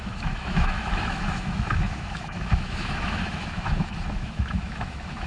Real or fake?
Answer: fake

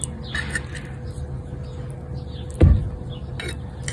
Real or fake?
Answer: real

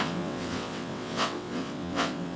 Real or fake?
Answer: fake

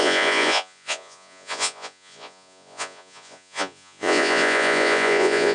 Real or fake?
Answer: fake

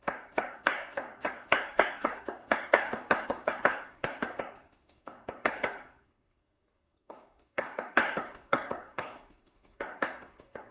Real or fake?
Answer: fake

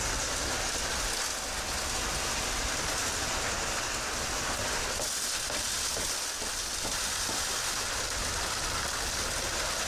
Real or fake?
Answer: real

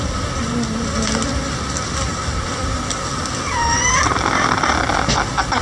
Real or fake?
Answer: real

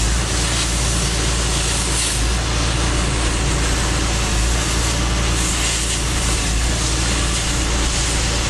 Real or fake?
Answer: real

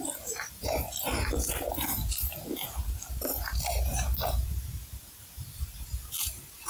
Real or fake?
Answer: fake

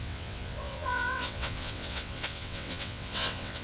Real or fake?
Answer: fake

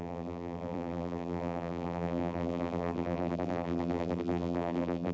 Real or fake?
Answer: fake